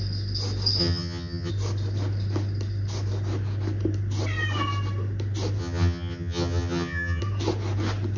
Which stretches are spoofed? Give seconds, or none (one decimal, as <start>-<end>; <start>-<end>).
0.8-1.5; 5.6-7.2